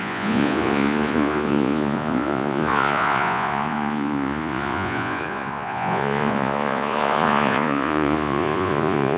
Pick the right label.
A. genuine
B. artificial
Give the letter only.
B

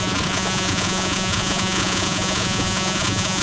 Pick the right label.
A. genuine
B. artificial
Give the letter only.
B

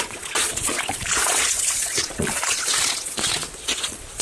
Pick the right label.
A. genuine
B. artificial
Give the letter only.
B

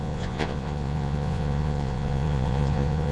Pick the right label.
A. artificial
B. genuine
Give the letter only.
A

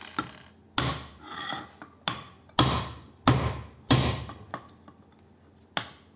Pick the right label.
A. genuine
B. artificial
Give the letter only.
A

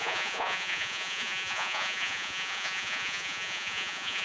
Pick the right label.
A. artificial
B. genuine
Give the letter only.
A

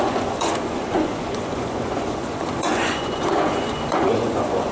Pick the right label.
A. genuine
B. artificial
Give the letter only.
B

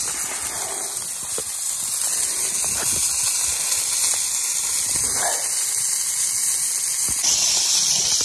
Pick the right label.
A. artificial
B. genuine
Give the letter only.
B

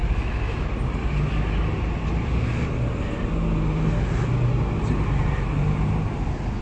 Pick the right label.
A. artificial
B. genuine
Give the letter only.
B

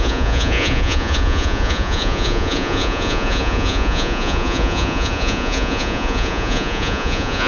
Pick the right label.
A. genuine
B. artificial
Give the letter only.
B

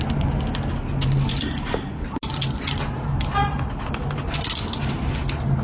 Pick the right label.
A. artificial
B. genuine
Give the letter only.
B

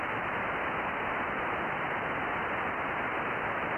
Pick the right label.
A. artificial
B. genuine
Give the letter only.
B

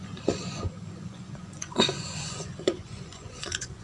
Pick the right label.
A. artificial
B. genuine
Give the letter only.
A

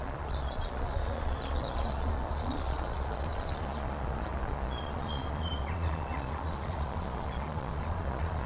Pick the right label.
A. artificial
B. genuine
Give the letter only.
A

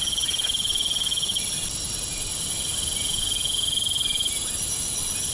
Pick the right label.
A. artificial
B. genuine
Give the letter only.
B